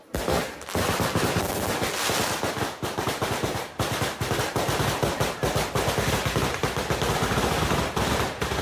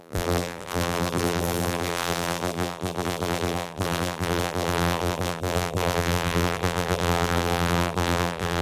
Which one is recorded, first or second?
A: first